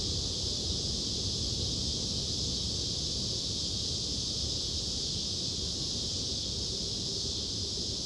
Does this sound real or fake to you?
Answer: real